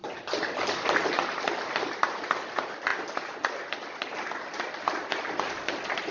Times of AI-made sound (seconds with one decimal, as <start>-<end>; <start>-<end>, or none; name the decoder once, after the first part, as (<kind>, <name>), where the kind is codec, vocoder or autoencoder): none